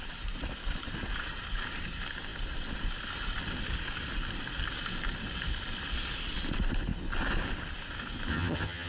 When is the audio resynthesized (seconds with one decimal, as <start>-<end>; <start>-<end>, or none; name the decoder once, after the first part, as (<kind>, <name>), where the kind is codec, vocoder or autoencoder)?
8.3-8.9 (vocoder, HiFi-GAN)